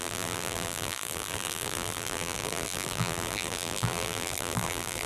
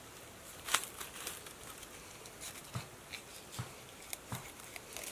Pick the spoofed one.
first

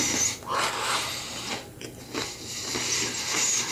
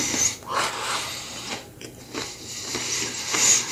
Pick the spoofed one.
second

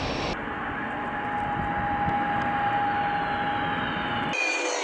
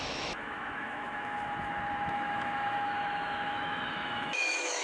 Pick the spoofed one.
second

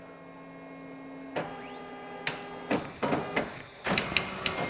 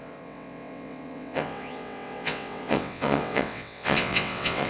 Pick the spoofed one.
second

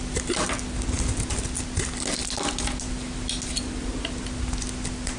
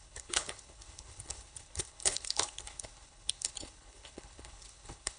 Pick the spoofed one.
second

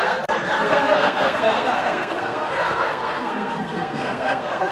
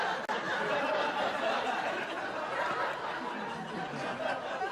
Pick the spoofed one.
first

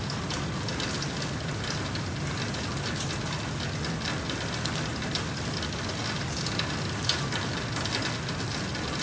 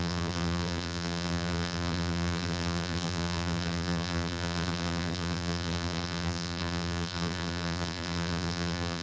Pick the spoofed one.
second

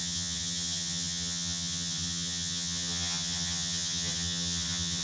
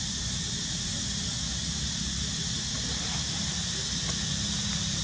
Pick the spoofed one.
first